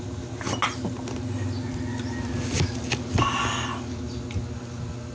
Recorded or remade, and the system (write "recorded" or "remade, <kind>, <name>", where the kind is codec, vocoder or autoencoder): recorded